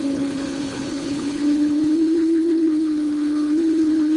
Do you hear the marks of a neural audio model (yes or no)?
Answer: yes